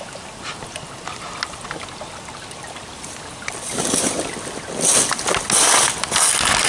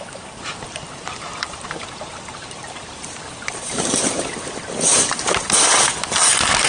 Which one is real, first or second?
first